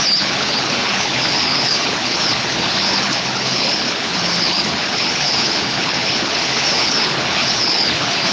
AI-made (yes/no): yes